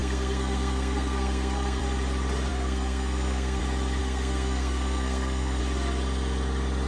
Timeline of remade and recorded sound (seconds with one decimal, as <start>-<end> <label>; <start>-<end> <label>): 0.0-1.8 remade; 1.8-2.5 recorded; 2.5-3.6 remade; 3.6-4.0 recorded; 4.0-5.6 remade; 5.6-6.9 recorded